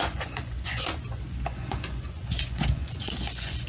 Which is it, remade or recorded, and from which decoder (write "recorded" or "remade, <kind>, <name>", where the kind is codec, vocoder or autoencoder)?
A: remade, vocoder, Vocos